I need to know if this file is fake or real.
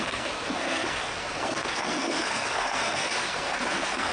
fake